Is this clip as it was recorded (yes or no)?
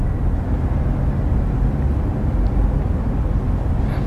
yes